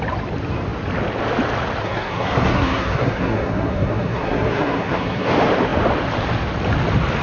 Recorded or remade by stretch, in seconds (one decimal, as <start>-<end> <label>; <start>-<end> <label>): 0.0-1.8 recorded; 1.8-5.3 remade; 5.3-7.2 recorded